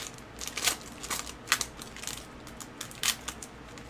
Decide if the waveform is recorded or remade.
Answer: recorded